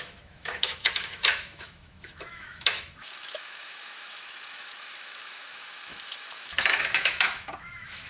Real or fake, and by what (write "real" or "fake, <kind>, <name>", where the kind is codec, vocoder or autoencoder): fake, autoencoder, DAC-VAE